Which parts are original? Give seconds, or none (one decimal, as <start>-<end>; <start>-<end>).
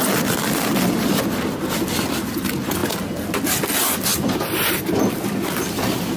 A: 0.0-2.8; 3.4-4.1